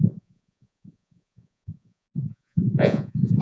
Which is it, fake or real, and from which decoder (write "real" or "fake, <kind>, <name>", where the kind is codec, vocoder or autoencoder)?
fake, vocoder, Vocos